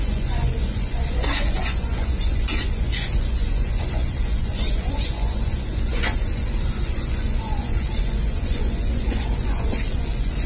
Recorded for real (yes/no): no